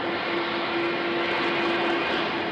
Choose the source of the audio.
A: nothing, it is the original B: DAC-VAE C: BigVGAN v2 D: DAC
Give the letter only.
A